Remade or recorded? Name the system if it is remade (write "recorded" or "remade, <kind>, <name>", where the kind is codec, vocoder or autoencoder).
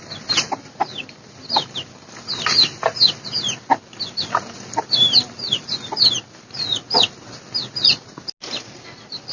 recorded